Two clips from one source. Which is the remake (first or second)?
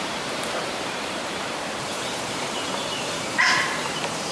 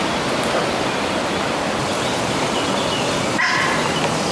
first